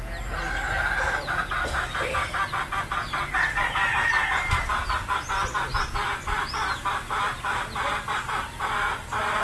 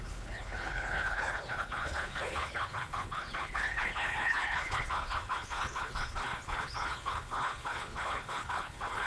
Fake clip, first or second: second